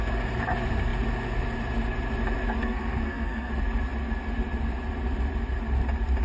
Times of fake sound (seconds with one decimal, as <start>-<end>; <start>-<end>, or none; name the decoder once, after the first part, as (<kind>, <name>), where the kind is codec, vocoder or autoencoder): 2.6-3.5 (codec, SNAC)